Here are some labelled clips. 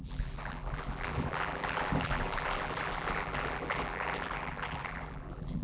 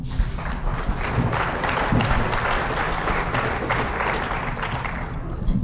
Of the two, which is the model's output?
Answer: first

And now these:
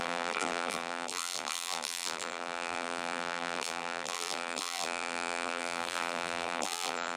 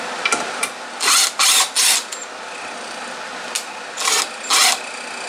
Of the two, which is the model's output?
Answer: first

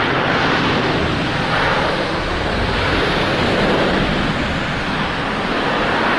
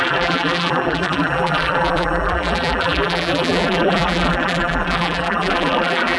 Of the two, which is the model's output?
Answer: second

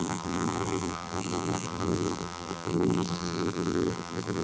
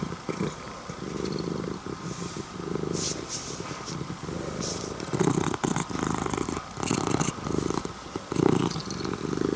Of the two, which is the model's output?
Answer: first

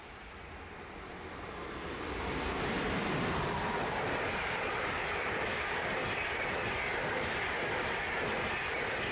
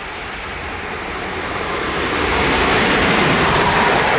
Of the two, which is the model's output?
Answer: second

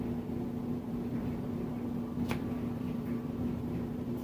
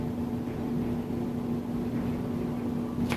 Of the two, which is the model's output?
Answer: first